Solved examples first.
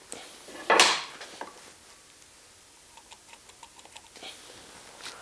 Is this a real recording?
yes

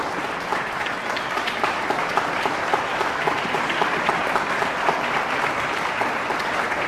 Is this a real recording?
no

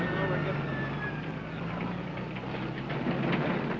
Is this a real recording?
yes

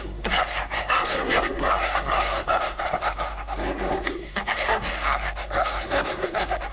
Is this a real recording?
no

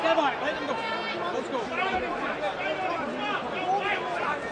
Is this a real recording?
yes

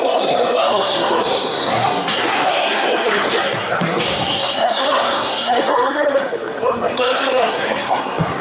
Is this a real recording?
no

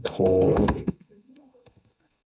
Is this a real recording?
no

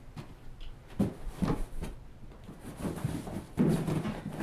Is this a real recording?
yes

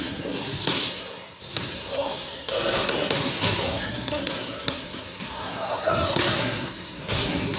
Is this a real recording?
no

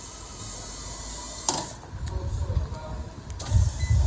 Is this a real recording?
yes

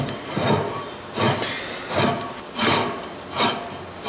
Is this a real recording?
yes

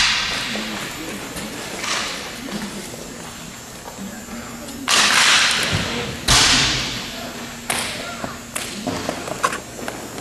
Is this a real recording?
yes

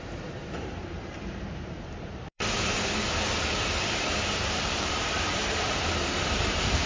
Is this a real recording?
no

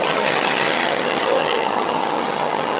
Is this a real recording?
no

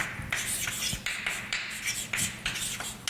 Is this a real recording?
yes